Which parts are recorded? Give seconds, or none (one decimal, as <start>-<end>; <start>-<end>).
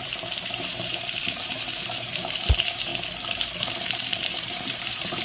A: 2.9-3.6